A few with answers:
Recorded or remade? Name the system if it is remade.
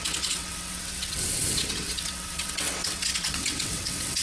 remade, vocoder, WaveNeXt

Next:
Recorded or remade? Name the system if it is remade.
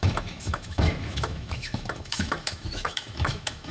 remade, autoencoder, DAC-VAE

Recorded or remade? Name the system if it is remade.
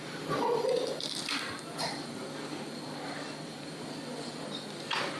recorded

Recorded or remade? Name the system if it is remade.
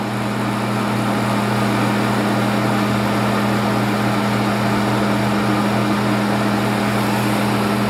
recorded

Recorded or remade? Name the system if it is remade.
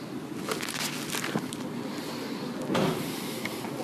recorded